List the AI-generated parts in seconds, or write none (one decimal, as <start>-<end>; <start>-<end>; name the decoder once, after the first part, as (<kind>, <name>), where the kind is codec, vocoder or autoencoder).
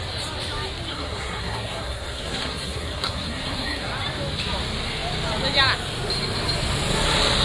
0.9-3.9 (codec, SNAC)